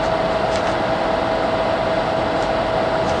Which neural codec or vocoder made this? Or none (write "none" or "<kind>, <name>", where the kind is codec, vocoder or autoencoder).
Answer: none